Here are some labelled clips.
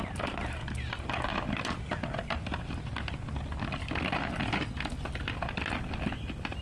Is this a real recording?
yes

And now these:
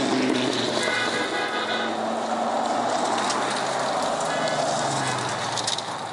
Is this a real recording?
yes